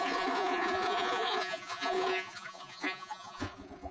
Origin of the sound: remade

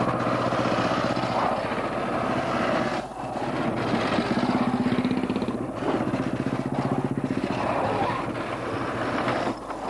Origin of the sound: recorded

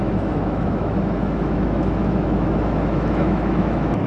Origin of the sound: remade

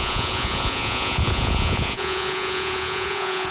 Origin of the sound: remade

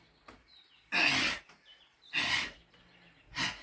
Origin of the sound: recorded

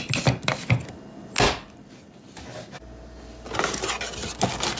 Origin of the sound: recorded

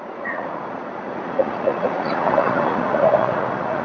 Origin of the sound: remade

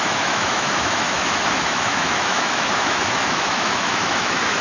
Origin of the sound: remade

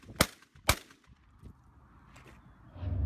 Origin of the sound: recorded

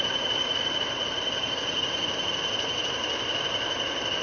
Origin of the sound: recorded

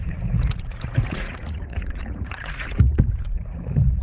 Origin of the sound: remade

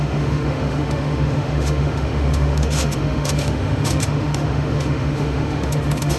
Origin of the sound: remade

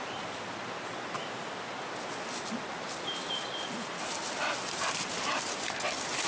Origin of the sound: recorded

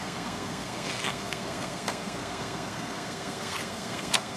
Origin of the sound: remade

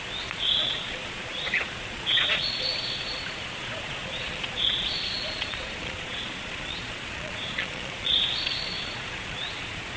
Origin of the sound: remade